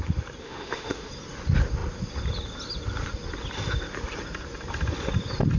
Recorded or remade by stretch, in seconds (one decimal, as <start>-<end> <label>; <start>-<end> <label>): 0.0-0.4 recorded; 0.4-1.1 remade; 1.1-5.6 recorded